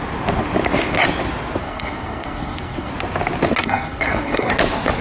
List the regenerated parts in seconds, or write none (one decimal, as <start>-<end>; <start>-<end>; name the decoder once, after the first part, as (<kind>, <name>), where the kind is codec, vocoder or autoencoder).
1.6-2.9 (codec, SNAC); 3.6-4.5